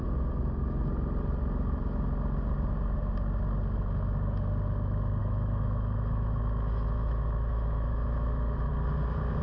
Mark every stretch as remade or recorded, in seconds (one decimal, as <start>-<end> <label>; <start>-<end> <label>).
0.0-5.2 recorded; 5.2-8.7 remade; 8.7-9.4 recorded